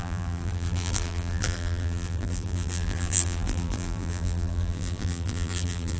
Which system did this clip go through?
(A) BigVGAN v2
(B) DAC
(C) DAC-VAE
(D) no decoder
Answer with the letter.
A